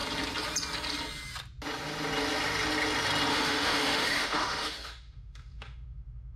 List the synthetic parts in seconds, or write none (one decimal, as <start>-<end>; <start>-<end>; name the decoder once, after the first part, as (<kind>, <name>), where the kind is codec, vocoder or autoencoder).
3.3-6.4 (autoencoder, DAC-VAE)